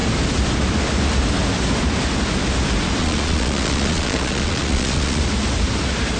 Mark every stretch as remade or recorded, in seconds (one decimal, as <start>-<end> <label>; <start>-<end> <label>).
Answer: 0.0-3.0 recorded; 3.0-5.2 remade; 5.2-6.2 recorded